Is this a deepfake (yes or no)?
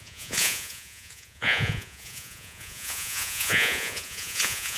yes